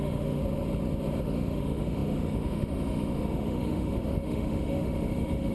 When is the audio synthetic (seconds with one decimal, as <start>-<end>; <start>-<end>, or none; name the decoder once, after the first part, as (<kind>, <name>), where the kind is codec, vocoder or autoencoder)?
0.0-0.4 (autoencoder, DAC-VAE); 1.2-5.5